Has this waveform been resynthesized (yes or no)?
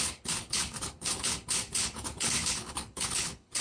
yes